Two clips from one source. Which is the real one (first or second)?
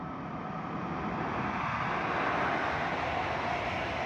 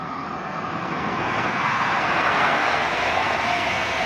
first